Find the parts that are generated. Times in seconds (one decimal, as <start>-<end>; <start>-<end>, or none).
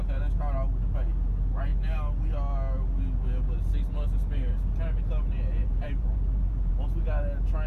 5.6-6.7